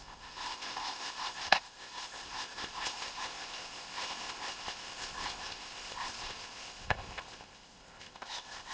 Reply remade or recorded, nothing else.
remade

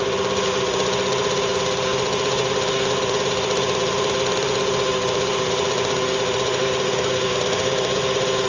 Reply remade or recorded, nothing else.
recorded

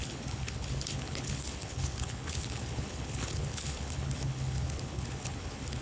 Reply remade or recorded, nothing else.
remade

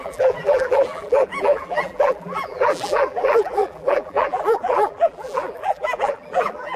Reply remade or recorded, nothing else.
remade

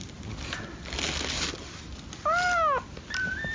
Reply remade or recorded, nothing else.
recorded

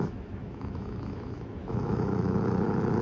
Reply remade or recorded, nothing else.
remade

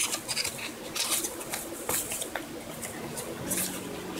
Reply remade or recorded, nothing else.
recorded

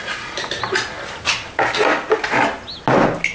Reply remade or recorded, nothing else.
recorded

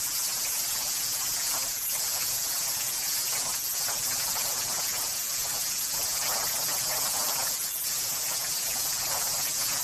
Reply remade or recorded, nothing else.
recorded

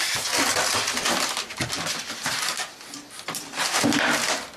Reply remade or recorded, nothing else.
recorded